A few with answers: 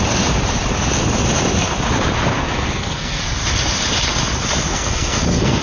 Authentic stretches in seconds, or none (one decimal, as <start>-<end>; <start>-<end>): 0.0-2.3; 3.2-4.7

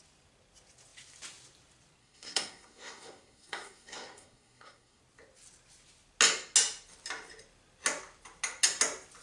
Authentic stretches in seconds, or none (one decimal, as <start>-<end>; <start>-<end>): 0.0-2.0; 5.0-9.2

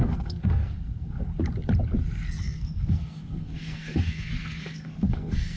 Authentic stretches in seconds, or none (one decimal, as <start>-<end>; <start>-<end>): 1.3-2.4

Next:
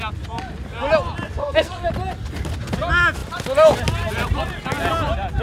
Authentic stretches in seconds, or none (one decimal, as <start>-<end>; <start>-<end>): 0.0-1.4; 1.9-5.4